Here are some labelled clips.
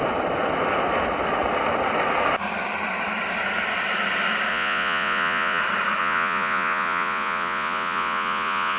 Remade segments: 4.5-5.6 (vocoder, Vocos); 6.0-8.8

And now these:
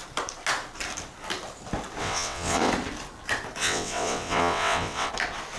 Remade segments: 2.0-2.7 (vocoder, WaveNeXt); 3.6-5.1

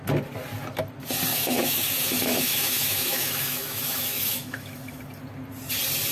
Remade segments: 1.3-5.0 (autoencoder, DAC-VAE)

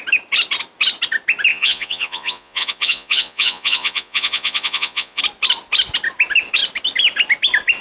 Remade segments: 1.5-5.2 (vocoder, Vocos)

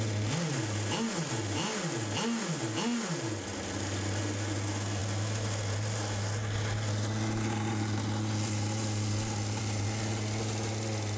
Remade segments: none